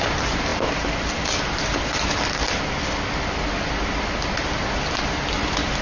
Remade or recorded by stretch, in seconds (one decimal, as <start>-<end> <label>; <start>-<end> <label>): 0.0-5.8 recorded